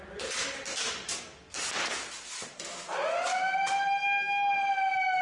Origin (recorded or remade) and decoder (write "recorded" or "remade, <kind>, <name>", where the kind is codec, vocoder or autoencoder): recorded